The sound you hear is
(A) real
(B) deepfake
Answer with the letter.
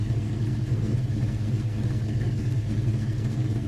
B